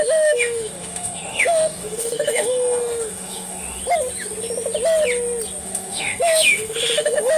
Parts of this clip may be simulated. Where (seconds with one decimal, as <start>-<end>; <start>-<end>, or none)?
0.0-3.8; 5.6-7.4